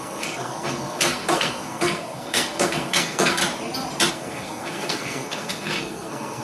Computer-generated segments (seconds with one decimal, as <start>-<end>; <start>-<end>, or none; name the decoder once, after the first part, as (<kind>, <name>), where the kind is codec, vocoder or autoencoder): 0.0-3.4 (codec, SNAC); 4.1-6.4